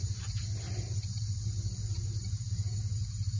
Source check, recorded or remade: recorded